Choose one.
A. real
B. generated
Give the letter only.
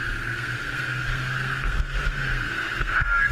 B